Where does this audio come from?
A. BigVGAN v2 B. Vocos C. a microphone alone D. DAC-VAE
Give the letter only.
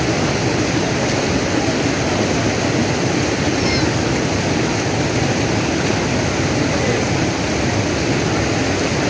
C